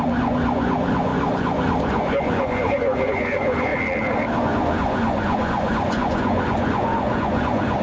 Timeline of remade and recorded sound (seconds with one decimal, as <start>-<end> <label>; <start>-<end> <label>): 0.0-3.7 remade; 3.7-4.4 recorded; 4.4-7.8 remade